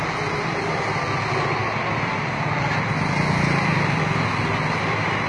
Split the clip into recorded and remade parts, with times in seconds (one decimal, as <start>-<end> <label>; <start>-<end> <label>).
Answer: 0.0-5.3 recorded